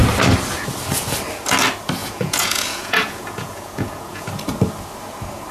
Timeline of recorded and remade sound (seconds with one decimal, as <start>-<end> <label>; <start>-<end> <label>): 0.0-2.0 recorded; 2.0-4.3 remade; 4.3-5.5 recorded